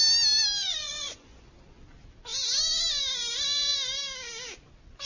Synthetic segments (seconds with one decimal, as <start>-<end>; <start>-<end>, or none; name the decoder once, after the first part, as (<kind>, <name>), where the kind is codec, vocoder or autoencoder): 0.6-1.5 (vocoder, Vocos)